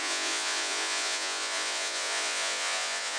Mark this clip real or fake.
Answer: fake